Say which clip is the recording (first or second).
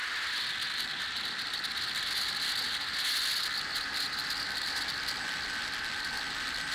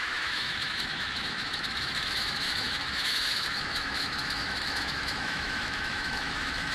first